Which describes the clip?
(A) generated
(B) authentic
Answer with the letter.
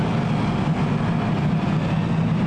B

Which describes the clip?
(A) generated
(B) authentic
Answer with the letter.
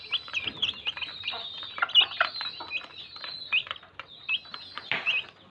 B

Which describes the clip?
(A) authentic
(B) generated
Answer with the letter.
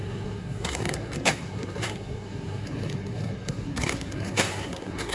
B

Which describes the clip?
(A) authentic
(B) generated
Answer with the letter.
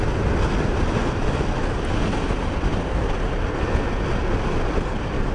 A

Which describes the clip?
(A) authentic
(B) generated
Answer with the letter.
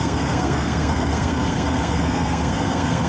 B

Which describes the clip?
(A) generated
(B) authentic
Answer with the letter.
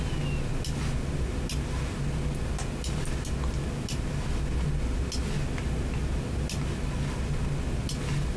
B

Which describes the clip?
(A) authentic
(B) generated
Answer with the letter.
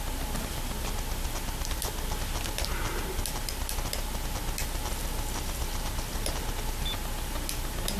A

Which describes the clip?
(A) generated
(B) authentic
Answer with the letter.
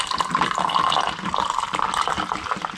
B